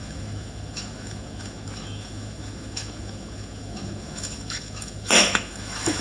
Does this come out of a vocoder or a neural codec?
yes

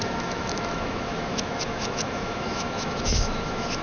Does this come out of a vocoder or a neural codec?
yes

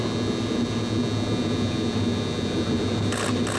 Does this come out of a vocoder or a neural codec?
no